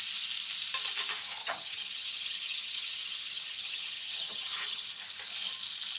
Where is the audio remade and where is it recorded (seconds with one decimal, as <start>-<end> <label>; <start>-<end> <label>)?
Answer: 0.0-1.4 recorded; 1.4-5.0 remade; 5.0-6.0 recorded